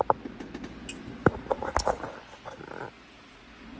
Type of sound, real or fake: real